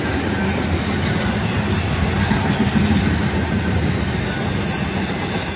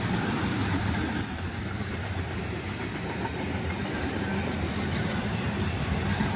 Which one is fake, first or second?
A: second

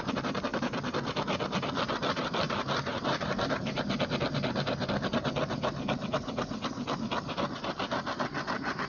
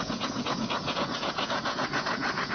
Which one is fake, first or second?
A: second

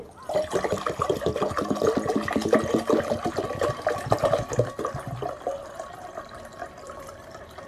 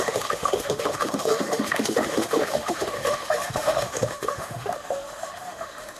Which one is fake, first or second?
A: second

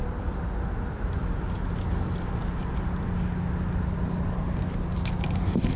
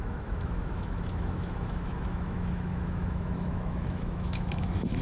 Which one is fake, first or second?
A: second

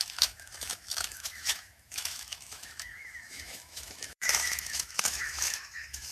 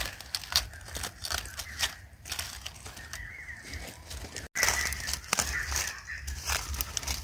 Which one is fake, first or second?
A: first